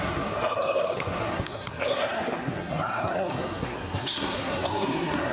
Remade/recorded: remade